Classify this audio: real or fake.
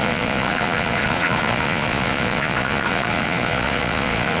fake